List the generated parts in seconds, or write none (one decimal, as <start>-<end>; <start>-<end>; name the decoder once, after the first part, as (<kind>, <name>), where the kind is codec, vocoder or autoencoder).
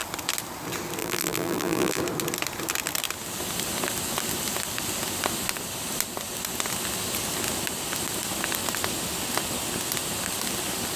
1.0-2.0 (vocoder, BigVGAN v2)